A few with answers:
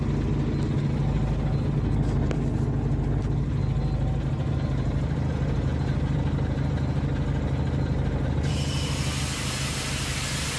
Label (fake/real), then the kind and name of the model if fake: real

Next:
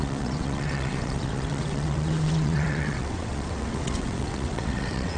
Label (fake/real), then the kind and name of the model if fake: fake, vocoder, WaveNeXt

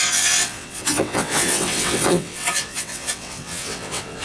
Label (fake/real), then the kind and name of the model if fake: fake, vocoder, WaveNeXt